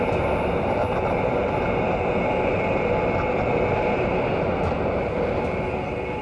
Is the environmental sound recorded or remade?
recorded